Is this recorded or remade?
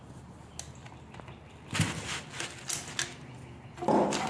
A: recorded